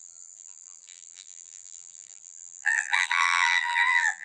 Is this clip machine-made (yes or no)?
yes